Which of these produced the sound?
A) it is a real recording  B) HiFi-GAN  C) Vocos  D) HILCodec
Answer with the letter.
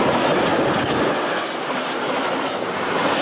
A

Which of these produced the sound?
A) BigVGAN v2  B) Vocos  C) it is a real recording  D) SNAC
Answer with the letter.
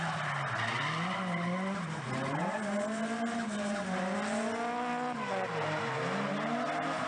C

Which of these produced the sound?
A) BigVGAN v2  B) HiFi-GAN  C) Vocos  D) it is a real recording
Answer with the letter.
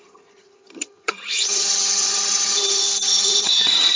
B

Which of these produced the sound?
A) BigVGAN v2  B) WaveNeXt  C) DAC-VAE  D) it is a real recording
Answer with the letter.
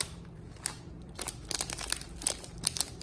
A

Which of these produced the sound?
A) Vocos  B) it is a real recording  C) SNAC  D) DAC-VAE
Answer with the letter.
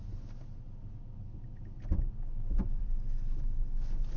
B